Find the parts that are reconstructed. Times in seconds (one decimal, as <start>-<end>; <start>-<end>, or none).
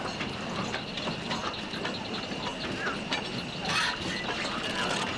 0.0-1.4; 2.0-2.5